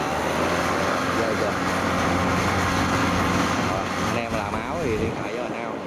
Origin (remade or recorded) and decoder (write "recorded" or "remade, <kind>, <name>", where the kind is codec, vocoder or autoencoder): recorded